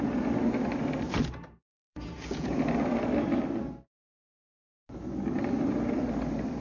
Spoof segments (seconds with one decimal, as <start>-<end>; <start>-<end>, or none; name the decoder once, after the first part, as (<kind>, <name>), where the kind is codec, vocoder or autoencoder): 1.7-2.6 (vocoder, Vocos)